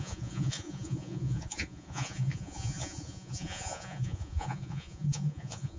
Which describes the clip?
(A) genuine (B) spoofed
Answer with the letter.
B